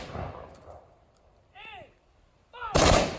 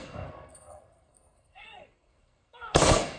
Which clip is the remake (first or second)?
second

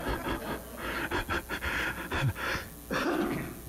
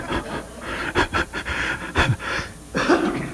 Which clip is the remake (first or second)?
second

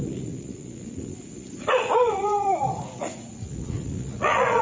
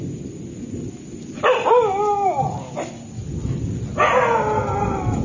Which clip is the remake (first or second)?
first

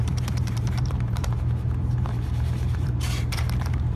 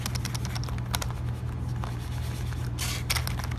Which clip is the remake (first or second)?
first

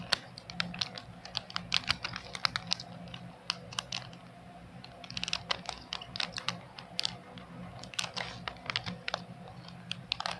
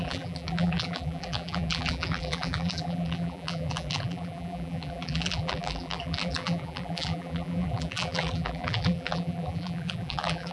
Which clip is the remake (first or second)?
second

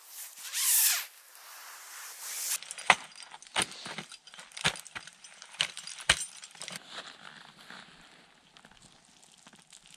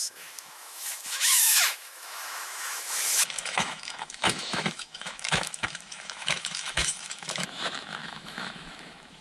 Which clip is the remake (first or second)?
second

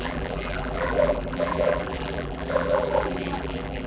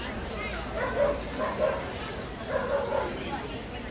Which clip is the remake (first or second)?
first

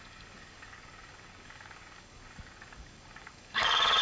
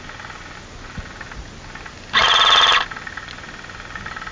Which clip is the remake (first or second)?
first